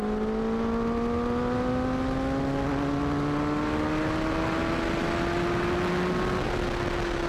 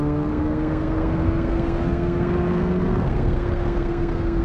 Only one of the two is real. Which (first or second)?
first